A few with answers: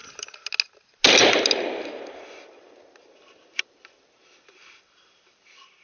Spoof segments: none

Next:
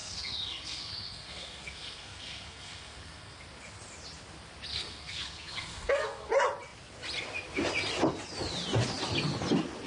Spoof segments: 0.0-3.4 (codec, SNAC); 4.7-6.3